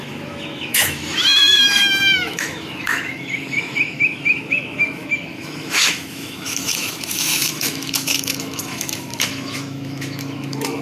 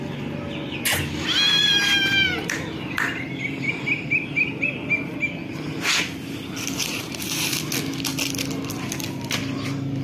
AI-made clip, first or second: first